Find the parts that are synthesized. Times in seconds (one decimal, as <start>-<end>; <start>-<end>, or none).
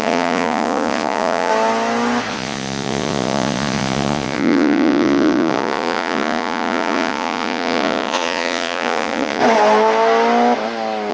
0.0-1.5; 2.3-9.4